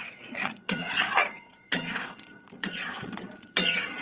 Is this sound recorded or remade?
remade